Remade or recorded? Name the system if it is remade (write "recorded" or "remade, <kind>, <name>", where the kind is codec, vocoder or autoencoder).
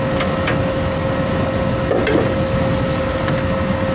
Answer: recorded